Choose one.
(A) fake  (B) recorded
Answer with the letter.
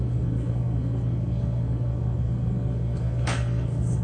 A